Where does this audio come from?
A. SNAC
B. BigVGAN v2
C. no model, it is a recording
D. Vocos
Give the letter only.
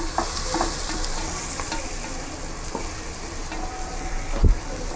C